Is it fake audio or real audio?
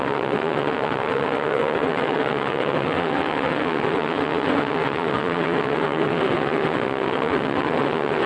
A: fake